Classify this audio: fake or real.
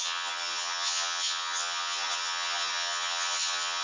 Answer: fake